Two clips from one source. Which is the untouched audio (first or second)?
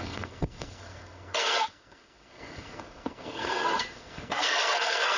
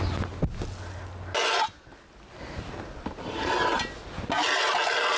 second